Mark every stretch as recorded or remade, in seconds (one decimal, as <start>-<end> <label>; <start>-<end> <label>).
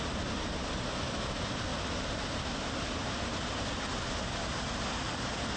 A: 0.0-5.6 recorded